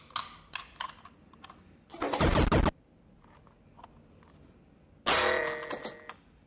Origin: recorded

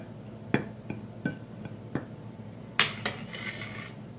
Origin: recorded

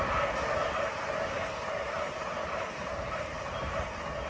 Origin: recorded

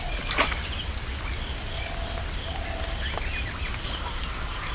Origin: recorded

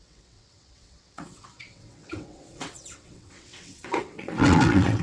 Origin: remade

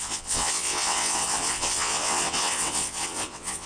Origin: remade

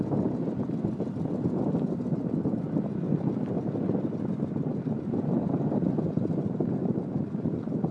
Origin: recorded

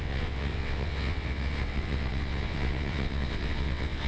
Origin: remade